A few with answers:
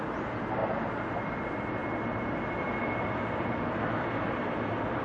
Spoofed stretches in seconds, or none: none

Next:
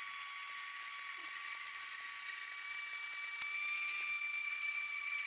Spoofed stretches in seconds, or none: 1.1-2.0 (vocoder, Vocos); 4.4-5.3